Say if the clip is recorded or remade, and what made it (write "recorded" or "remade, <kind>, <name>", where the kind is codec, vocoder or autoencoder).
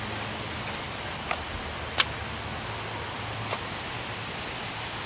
recorded